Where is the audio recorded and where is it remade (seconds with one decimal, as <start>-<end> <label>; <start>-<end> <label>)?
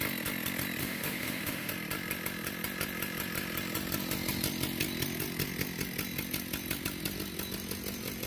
0.0-0.8 recorded; 0.8-1.7 remade; 1.7-8.3 recorded